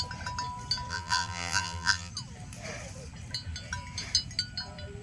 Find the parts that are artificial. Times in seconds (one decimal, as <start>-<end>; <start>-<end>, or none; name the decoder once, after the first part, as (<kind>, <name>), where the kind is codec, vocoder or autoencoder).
0.9-2.1 (vocoder, BigVGAN v2)

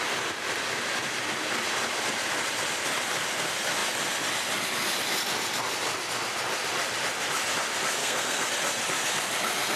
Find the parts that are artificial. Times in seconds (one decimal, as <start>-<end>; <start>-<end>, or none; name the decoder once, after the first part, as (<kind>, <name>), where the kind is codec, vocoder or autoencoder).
8.0-8.5 (codec, SNAC)

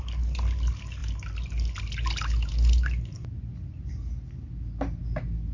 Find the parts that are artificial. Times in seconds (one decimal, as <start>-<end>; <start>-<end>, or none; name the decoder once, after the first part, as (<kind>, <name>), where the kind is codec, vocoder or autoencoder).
none